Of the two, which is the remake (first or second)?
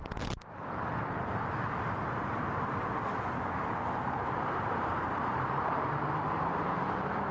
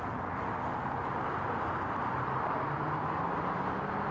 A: first